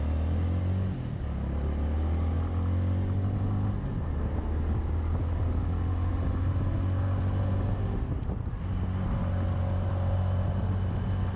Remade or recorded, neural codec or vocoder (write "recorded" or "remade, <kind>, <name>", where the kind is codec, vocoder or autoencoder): recorded